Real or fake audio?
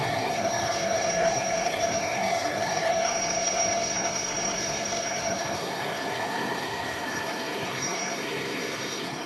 fake